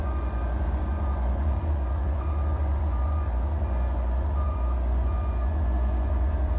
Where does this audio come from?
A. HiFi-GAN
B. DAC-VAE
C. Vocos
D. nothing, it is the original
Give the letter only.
C